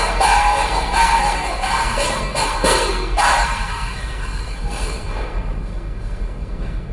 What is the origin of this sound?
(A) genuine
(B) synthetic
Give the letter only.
B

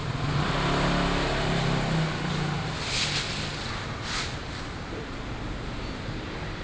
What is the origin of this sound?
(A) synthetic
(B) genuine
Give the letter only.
B